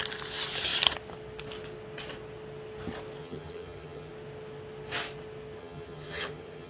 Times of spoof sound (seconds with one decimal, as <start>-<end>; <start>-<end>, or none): 3.2-4.1; 5.6-6.7